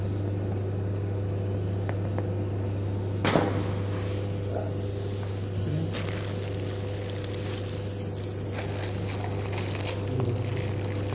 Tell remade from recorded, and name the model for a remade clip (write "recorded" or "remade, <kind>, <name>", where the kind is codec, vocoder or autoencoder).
recorded